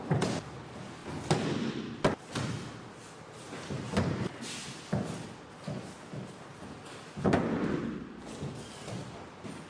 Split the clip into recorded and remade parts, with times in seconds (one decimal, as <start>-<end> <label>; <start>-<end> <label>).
0.0-1.0 remade; 1.0-3.2 recorded; 3.2-4.6 remade; 4.6-9.7 recorded